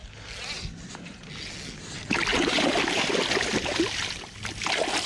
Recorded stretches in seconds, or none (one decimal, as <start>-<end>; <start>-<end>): 0.0-2.3; 3.1-5.1